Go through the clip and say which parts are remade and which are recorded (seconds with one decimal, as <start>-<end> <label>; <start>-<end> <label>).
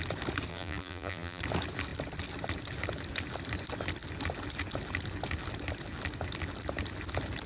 0.0-0.5 recorded; 0.5-1.4 remade; 1.4-7.5 recorded